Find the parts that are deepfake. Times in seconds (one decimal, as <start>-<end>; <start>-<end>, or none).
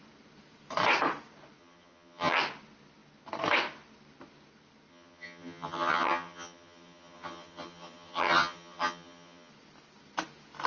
1.6-2.4; 4.9-9.5